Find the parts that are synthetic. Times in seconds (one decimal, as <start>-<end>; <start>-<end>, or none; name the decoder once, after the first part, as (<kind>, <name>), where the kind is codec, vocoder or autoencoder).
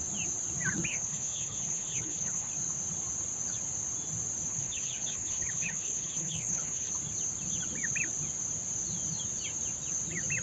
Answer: 0.9-2.5 (codec, HILCodec); 4.5-6.9